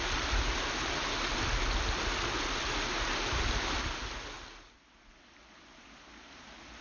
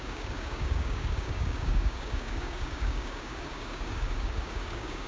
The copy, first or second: second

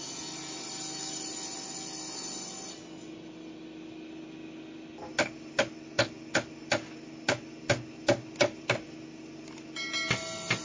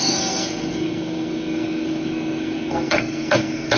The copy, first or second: second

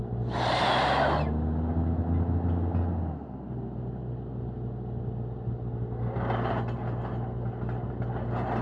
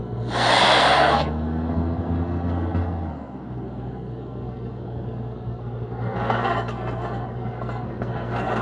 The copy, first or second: second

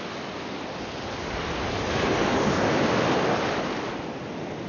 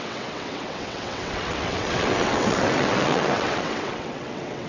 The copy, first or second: second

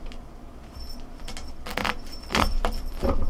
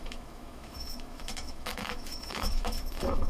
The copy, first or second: second